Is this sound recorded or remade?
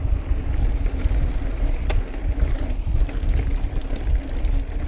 recorded